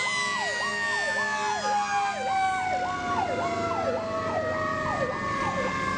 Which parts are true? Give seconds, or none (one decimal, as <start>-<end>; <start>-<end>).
0.0-4.7

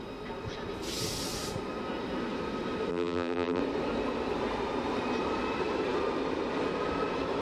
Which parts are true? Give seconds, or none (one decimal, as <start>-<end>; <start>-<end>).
0.0-2.9; 3.6-7.4

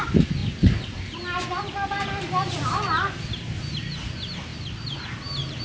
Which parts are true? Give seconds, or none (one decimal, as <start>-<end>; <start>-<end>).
0.0-5.6